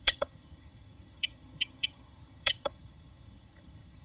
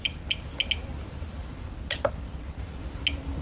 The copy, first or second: first